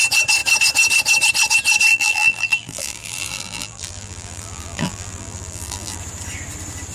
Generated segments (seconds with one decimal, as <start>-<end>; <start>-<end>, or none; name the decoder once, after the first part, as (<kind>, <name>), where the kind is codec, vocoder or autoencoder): 1.9-6.0 (vocoder, BigVGAN v2)

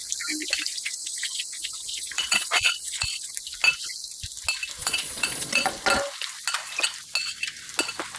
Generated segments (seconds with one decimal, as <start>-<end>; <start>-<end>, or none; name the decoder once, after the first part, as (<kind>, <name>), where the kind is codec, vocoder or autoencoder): 0.7-3.3 (vocoder, Vocos); 4.8-5.7

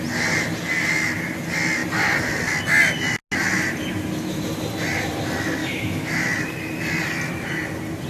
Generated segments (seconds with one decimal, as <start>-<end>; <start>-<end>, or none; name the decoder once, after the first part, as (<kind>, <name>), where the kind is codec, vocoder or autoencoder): 5.6-6.1 (autoencoder, DAC-VAE)

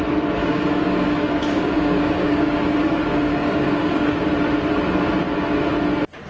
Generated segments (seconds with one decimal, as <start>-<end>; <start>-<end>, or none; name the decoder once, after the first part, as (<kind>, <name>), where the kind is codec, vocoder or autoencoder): 0.4-4.2 (codec, DAC)

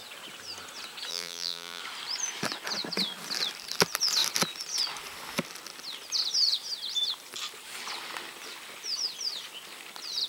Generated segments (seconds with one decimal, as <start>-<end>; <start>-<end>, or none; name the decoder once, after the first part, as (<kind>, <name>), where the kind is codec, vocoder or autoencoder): 1.1-1.8 (vocoder, BigVGAN v2)